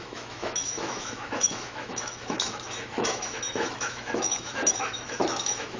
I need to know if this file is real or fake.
fake